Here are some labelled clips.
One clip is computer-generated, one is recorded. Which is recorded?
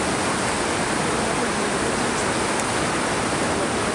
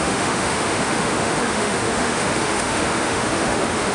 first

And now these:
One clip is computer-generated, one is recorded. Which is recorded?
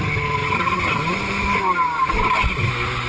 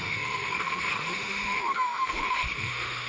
first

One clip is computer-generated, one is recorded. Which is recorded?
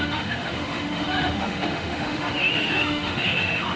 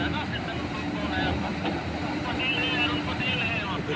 second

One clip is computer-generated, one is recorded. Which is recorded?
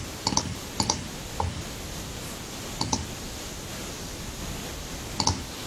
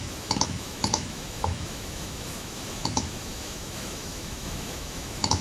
first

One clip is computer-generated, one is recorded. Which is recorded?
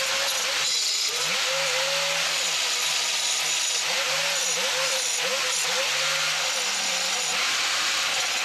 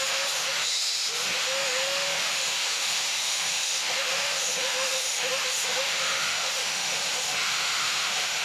first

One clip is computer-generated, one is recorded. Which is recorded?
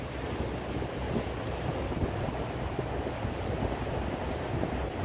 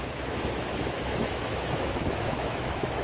first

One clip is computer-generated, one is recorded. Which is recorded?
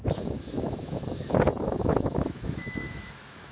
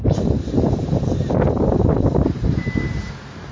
second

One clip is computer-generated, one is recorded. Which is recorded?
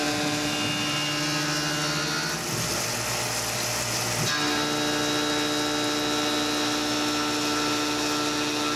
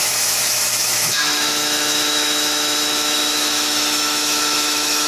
first